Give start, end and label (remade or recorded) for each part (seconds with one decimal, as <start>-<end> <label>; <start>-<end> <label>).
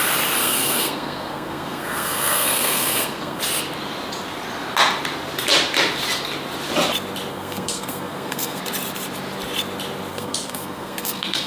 0.0-0.4 recorded; 0.4-3.4 remade; 3.4-7.3 recorded; 7.3-8.6 remade; 8.6-10.1 recorded; 10.1-11.5 remade